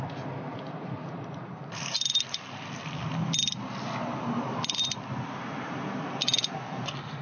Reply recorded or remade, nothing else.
recorded